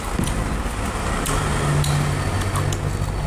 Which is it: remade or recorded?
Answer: recorded